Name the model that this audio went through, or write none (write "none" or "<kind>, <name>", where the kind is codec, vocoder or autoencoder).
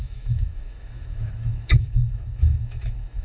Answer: autoencoder, DAC-VAE